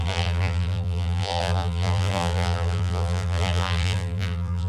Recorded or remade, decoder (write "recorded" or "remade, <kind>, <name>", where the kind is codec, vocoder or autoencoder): remade, vocoder, BigVGAN v2